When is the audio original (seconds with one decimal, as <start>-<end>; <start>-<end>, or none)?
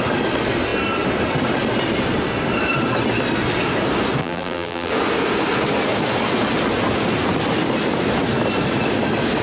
0.0-4.2; 4.9-9.4